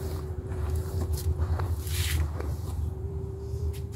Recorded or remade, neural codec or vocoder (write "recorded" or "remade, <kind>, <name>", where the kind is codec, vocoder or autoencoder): remade, vocoder, BigVGAN v2